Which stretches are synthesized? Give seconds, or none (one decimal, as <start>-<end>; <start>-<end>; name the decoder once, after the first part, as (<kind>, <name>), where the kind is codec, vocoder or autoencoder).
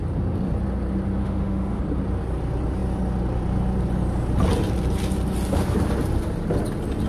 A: 1.2-1.8 (autoencoder, DAC-VAE)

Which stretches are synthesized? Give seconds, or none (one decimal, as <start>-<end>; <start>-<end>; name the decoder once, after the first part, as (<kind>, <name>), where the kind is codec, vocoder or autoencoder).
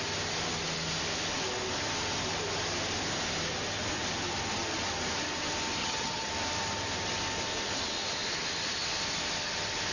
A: 5.8-6.3 (vocoder, HiFi-GAN)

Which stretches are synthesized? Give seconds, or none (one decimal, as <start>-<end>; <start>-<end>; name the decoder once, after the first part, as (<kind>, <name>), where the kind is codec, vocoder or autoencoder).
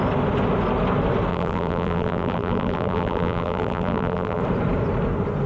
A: 1.3-4.4 (vocoder, BigVGAN v2)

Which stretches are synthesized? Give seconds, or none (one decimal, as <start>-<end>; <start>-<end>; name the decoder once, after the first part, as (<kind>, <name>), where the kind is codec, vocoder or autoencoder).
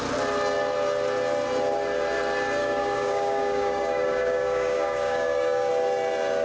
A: 2.6-5.7 (codec, DAC)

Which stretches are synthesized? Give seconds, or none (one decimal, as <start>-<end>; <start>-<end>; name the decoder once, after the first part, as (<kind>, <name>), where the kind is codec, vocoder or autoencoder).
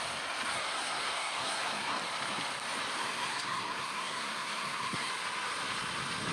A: 0.5-2.0 (codec, SNAC); 3.0-5.1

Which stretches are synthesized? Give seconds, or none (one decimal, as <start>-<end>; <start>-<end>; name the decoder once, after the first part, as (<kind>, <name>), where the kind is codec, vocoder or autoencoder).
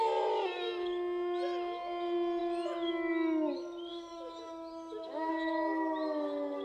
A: 3.9-5.3 (autoencoder, DAC-VAE)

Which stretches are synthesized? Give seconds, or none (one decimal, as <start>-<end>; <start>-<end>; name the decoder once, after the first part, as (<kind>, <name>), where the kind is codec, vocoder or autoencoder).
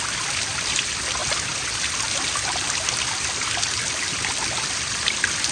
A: none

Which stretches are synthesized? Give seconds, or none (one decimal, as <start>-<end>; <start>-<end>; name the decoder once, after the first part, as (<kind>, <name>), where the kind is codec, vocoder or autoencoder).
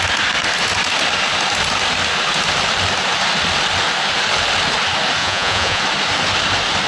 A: 5.2-5.8 (vocoder, Vocos)